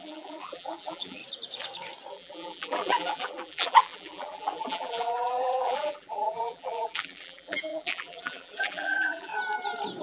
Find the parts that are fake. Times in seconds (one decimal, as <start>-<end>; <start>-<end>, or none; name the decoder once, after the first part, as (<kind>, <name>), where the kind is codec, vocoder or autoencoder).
0.0-1.2 (vocoder, BigVGAN v2); 2.1-9.3